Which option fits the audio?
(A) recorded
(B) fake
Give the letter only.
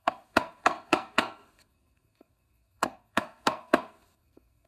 B